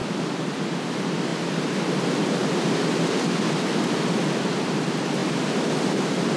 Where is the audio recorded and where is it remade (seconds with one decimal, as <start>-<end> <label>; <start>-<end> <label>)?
0.0-6.4 recorded